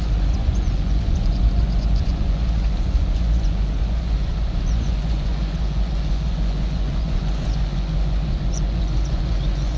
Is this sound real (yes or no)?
no